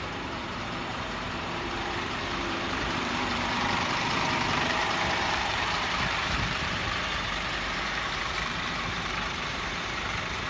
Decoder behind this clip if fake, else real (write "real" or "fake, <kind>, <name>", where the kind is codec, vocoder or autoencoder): fake, vocoder, BigVGAN v2